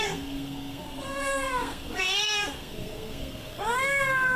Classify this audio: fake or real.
fake